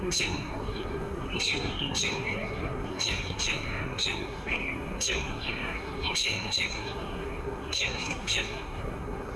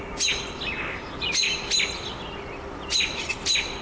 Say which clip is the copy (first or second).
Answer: first